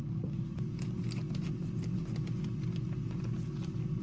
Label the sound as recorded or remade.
recorded